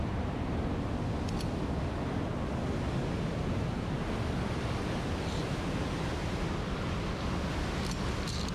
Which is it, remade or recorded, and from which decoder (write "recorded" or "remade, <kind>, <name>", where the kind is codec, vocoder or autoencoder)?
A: recorded